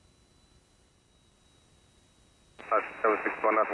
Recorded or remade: recorded